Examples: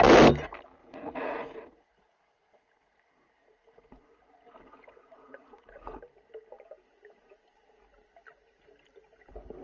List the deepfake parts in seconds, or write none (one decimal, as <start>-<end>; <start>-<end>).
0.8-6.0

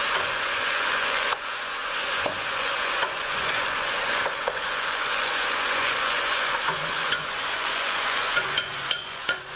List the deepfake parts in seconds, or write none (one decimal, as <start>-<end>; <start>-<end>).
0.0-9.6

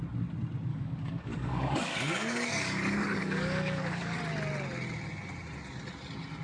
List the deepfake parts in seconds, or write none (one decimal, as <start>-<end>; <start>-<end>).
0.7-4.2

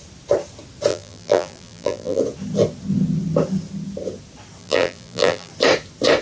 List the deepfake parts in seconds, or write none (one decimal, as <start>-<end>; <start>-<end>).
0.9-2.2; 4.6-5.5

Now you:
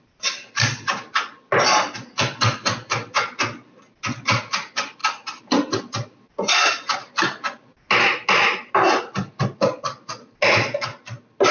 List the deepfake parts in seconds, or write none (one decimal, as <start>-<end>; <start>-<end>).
none

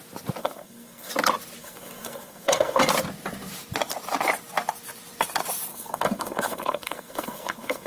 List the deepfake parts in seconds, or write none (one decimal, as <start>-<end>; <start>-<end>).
0.4-1.1; 1.6-2.8; 5.7-7.9

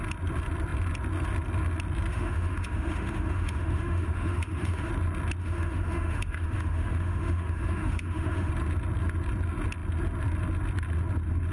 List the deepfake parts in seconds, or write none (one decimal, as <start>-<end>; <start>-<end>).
2.1-4.9; 5.4-8.5